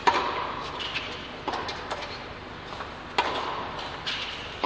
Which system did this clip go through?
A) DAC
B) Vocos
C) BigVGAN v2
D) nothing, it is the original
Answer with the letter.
D